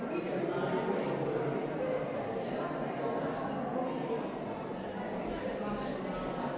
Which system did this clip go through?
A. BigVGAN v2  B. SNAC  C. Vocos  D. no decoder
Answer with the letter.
D